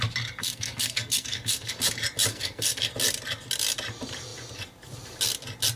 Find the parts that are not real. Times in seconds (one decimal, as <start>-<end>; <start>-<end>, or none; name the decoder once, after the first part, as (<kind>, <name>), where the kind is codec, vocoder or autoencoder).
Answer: 0.4-1.8 (codec, SNAC); 2.3-2.9